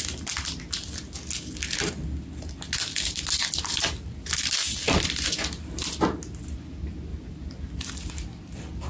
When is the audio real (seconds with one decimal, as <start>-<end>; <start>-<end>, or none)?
0.0-7.1; 7.9-8.9